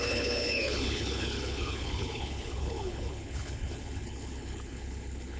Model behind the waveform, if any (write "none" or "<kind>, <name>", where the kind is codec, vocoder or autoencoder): codec, HILCodec